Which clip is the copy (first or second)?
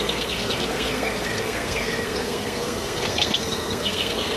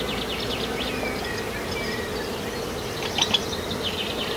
first